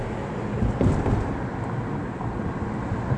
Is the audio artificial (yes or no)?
no